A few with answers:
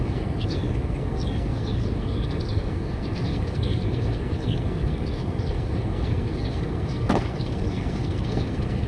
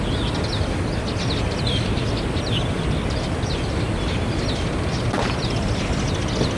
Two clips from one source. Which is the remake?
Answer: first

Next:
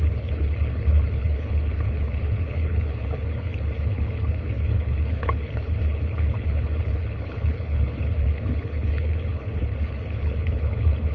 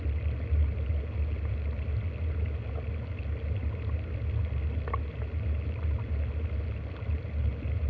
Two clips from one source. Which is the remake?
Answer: first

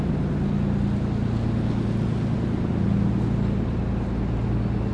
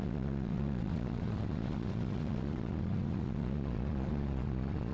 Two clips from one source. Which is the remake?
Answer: second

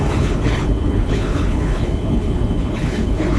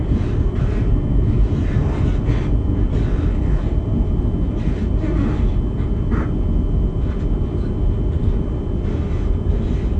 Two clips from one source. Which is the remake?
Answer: first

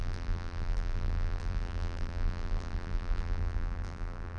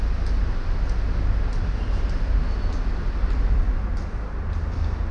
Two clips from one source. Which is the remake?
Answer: first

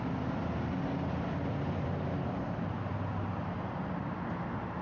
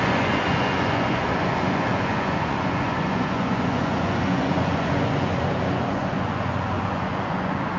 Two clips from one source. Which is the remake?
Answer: second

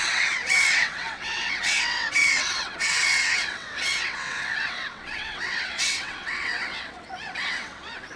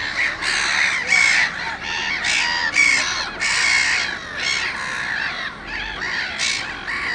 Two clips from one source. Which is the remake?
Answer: first